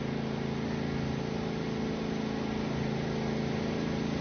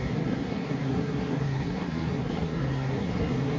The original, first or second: first